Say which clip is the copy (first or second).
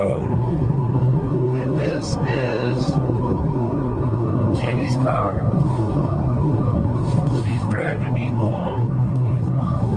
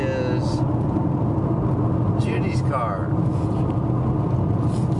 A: first